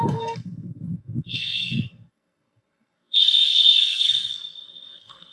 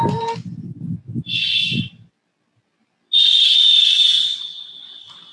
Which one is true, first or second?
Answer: second